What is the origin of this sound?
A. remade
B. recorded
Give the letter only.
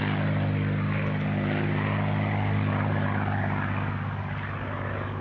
B